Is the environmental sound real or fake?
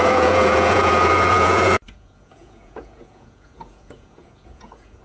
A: fake